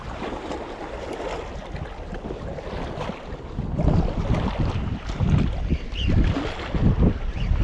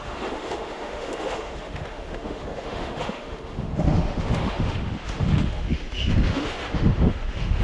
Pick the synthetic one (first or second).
second